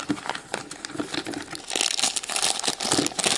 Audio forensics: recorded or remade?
recorded